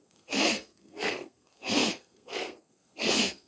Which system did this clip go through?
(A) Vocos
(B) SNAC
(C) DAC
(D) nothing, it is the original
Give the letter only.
B